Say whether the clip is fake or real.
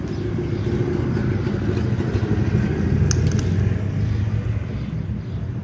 real